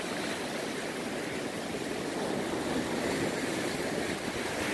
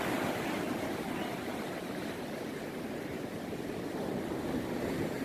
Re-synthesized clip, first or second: second